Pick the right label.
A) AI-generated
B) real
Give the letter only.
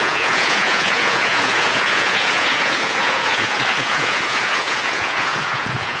A